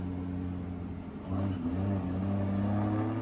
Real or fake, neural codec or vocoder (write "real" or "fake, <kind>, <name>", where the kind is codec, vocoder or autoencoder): real